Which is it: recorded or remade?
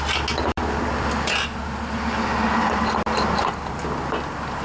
recorded